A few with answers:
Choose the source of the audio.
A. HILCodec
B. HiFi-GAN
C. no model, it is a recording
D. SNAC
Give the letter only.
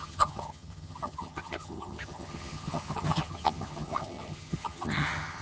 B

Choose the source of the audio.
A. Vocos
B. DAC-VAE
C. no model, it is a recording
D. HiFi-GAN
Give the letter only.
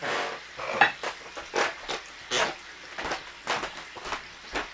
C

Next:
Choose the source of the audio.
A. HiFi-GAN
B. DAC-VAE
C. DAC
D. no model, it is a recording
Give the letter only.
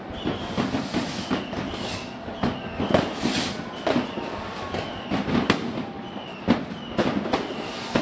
D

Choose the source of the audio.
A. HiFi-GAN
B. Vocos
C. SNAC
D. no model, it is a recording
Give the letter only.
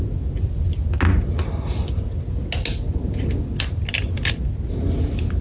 D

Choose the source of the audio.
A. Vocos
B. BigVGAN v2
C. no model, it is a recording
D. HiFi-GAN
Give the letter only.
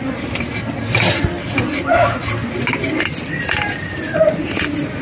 C